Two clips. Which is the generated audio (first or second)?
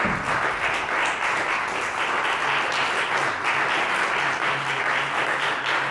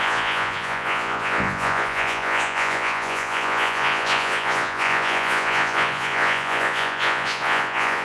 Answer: second